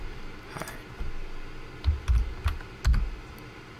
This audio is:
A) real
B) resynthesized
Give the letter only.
A